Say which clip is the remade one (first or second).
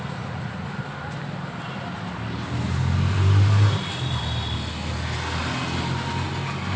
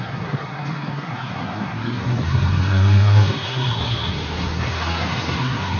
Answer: second